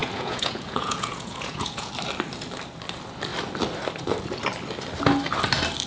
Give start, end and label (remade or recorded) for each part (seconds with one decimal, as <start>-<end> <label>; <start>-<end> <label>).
0.0-1.9 remade; 1.9-5.9 recorded